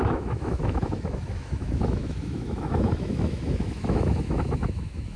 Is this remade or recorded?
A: remade